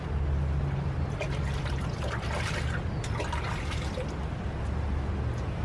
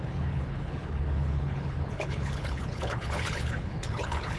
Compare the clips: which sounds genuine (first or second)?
first